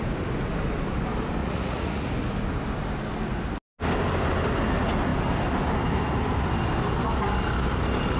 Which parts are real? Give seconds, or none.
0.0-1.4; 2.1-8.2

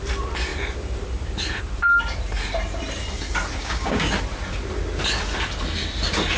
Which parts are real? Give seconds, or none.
0.0-3.6; 4.1-6.4

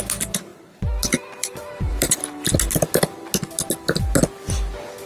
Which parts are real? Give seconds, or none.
0.0-0.5; 2.2-5.1

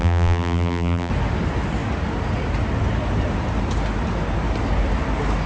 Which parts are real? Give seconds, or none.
1.1-5.5

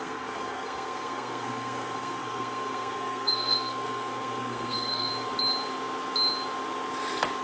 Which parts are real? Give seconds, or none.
5.1-7.4